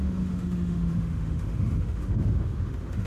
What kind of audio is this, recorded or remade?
remade